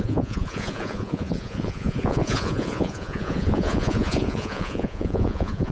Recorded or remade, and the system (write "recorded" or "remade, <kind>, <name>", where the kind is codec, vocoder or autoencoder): remade, vocoder, Vocos